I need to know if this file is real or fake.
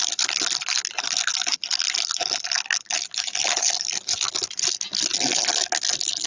real